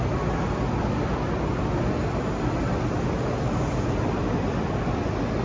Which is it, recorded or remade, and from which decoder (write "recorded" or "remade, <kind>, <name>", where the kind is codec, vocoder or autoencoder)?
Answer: recorded